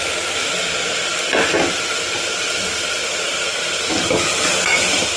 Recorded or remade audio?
recorded